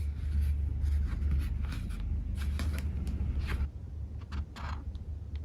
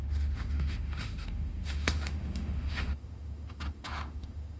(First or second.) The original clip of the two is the first